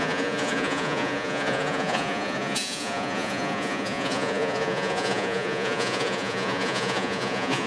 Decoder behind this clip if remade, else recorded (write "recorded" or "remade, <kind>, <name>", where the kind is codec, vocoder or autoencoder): remade, vocoder, Vocos